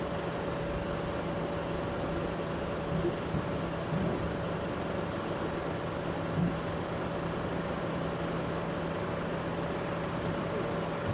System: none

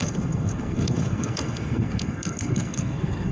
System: codec, SNAC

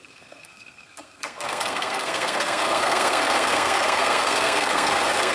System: codec, SNAC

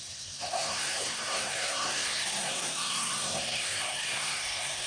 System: codec, SNAC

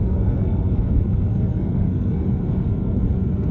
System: codec, SNAC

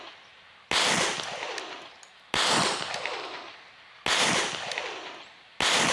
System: none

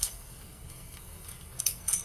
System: codec, SNAC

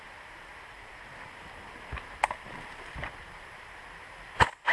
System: none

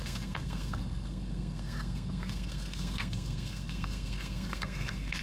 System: codec, SNAC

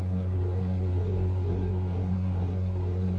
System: codec, SNAC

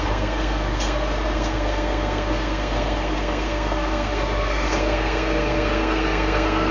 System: codec, SNAC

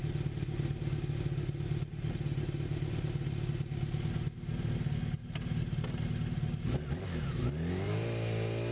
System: none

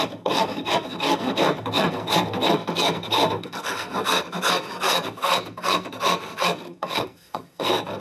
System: codec, SNAC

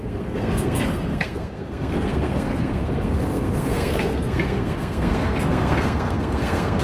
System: codec, SNAC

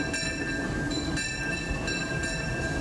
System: none